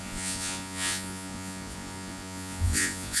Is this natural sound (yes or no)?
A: no